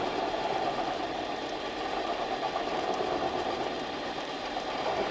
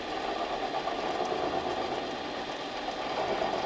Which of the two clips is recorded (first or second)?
second